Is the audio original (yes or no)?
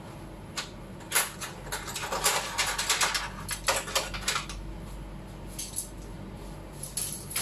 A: yes